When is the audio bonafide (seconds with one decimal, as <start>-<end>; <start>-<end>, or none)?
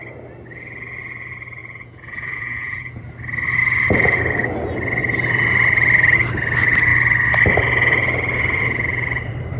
0.0-1.6; 3.0-9.6